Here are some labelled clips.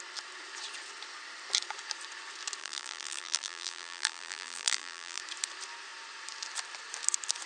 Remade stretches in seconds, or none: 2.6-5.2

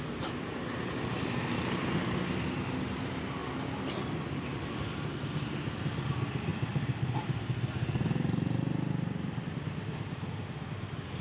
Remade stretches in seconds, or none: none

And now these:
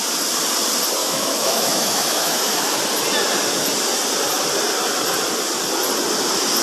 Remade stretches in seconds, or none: 1.0-2.8

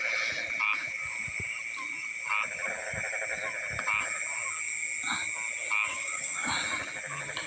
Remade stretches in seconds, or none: 5.9-6.5